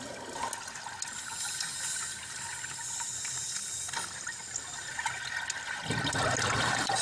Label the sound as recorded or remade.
recorded